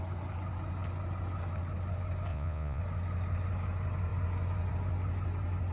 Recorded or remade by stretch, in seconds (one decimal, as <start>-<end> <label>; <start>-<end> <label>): 0.0-2.3 recorded; 2.3-2.8 remade; 2.8-5.7 recorded